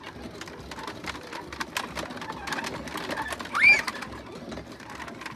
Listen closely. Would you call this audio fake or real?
real